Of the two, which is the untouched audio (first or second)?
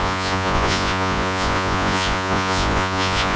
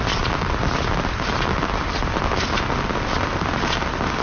second